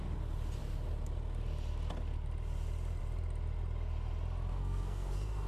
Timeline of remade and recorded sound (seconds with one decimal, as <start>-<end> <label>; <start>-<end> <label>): 0.0-4.5 recorded; 4.5-5.5 remade

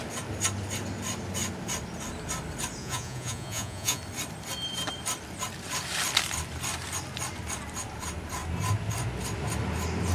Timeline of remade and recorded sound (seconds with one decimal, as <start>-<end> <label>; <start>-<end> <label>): 0.0-2.8 recorded; 2.8-4.0 remade; 4.0-10.1 recorded

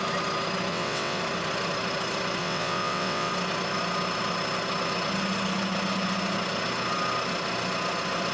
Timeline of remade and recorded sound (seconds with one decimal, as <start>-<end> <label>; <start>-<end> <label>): 0.0-0.7 recorded; 0.7-1.2 remade; 1.2-2.4 recorded; 2.4-3.3 remade; 3.3-8.3 recorded

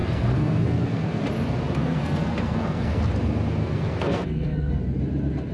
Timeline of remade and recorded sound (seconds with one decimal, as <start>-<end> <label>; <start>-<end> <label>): 0.0-1.2 remade; 1.2-1.8 recorded; 1.8-3.0 remade; 3.0-3.6 recorded; 3.6-4.7 remade; 4.7-5.5 recorded

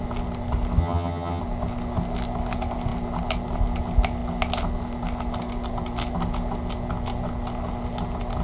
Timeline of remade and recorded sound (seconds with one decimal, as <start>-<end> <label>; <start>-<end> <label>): 0.0-0.8 recorded; 0.8-1.4 remade; 1.4-8.4 recorded

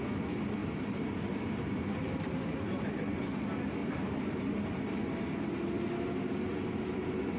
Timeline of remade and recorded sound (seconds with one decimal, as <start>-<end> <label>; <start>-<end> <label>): 0.0-0.6 recorded; 0.6-2.9 remade; 2.9-3.8 recorded; 3.8-4.5 remade; 4.5-7.4 recorded